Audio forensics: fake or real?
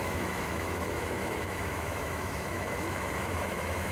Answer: fake